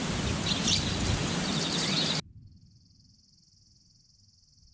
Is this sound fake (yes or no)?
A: no